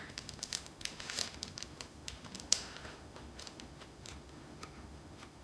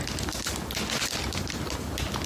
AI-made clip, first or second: first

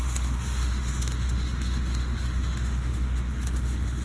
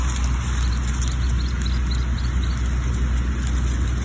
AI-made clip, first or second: first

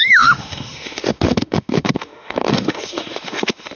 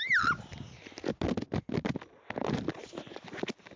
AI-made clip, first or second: first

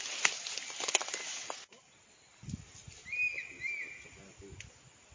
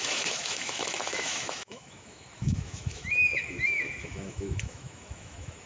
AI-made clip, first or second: second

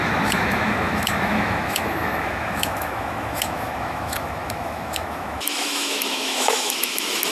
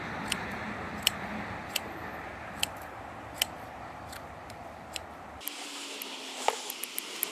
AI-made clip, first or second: first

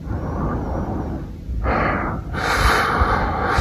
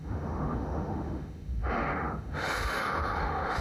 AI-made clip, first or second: second